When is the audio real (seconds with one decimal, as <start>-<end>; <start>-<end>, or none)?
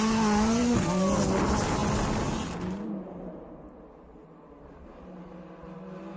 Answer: 0.0-6.2